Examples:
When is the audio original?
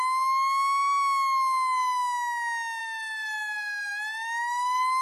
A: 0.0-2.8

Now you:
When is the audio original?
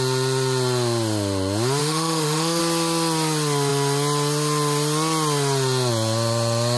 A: 0.0-1.8; 2.6-6.8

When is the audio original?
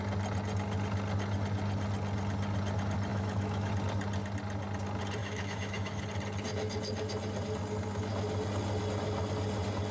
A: 0.0-3.1; 3.7-5.2; 6.0-9.9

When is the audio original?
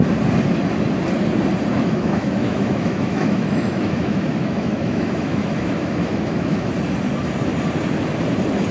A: 0.0-1.7; 6.7-8.7